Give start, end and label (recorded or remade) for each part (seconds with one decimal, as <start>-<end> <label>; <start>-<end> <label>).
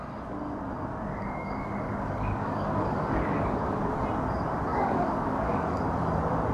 0.0-1.1 recorded; 1.1-3.9 remade; 3.9-4.7 recorded; 4.7-5.8 remade; 5.8-6.5 recorded